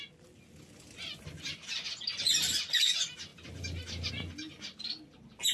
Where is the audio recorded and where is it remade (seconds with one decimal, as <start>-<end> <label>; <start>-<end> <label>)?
0.0-5.5 recorded